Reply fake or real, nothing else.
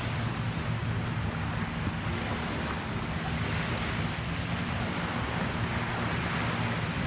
real